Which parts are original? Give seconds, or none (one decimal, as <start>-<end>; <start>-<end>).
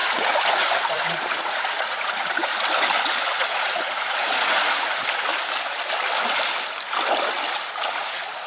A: 2.5-3.4; 5.0-8.0